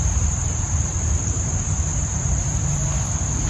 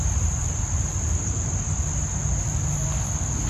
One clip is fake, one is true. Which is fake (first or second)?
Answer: first